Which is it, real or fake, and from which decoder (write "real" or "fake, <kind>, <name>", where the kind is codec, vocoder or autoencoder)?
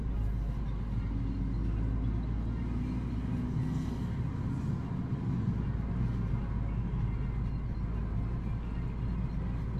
real